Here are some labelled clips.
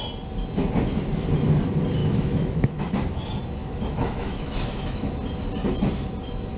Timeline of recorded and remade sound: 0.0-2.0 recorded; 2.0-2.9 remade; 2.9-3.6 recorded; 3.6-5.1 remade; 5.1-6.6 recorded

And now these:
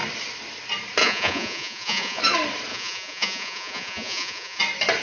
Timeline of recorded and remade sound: 0.0-1.0 recorded; 1.0-2.2 remade; 2.2-2.7 recorded; 2.7-4.6 remade; 4.6-5.0 recorded

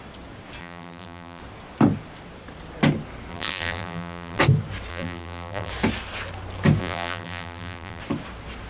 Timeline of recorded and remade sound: 0.0-0.6 recorded; 0.6-1.4 remade; 1.4-3.3 recorded; 3.3-4.4 remade; 4.4-4.9 recorded; 4.9-5.7 remade; 5.7-6.8 recorded; 6.8-8.0 remade; 8.0-8.7 recorded

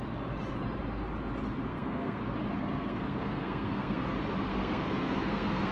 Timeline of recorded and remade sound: 0.0-1.7 recorded; 1.7-2.2 remade; 2.2-2.6 recorded; 2.6-4.0 remade; 4.0-4.5 recorded; 4.5-5.7 remade

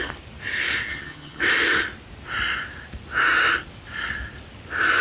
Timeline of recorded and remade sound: 0.0-0.9 recorded; 0.9-1.4 remade; 1.4-5.0 recorded

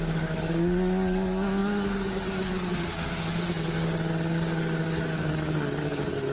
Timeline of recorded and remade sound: 0.0-6.3 remade

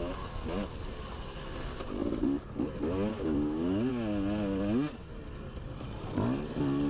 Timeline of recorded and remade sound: 0.0-3.1 recorded; 3.1-3.9 remade; 3.9-6.9 recorded